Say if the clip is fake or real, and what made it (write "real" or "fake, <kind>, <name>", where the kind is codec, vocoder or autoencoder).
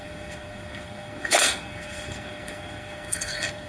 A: fake, codec, SNAC